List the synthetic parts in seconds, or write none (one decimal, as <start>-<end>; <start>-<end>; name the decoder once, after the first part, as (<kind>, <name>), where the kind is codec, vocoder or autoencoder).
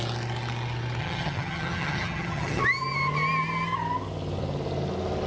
1.0-2.6 (vocoder, HiFi-GAN)